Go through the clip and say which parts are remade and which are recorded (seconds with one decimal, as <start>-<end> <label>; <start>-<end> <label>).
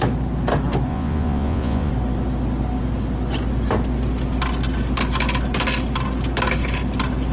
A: 0.0-0.9 recorded; 0.9-1.9 remade; 1.9-7.3 recorded